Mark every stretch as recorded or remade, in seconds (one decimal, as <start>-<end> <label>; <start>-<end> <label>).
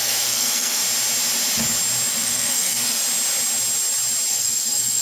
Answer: 0.0-0.8 remade; 0.8-2.1 recorded; 2.1-3.0 remade; 3.0-4.3 recorded; 4.3-5.0 remade